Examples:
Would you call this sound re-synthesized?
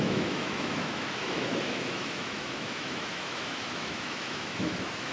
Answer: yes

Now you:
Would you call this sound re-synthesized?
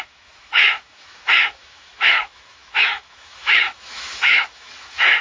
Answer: yes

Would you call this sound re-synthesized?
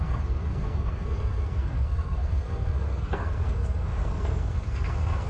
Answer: yes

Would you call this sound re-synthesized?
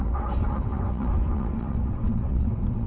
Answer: yes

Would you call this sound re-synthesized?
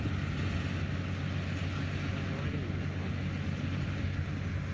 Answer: no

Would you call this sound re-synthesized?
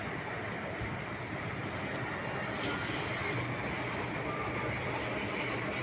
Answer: no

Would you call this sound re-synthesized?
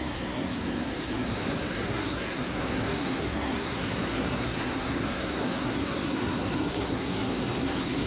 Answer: yes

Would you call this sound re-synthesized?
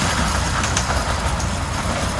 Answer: no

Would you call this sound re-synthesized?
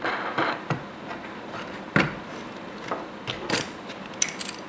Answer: no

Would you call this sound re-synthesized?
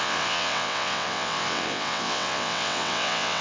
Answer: yes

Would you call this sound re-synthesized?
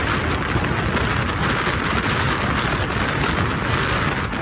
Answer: no